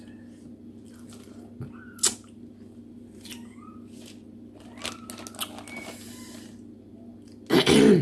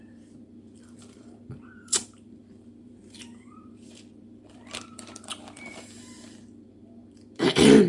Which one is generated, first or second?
second